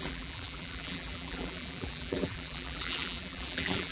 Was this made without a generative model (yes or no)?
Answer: no